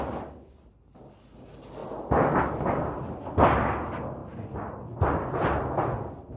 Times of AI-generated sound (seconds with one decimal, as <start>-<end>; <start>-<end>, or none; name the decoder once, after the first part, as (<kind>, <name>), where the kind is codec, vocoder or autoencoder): none